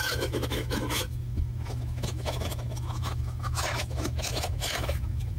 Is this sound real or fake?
fake